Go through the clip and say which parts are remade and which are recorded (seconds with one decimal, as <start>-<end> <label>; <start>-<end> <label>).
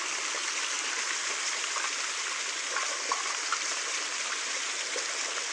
0.0-5.5 recorded